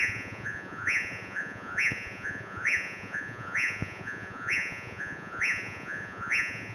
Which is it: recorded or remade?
remade